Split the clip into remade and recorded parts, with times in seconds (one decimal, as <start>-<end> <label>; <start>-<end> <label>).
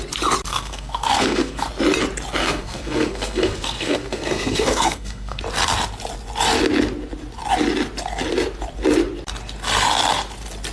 0.0-0.5 recorded; 0.5-1.7 remade; 1.7-2.4 recorded; 2.4-5.4 remade; 5.4-10.7 recorded